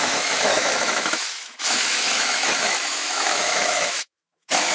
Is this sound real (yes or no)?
no